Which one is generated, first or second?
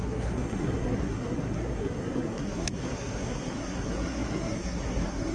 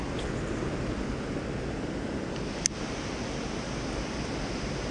first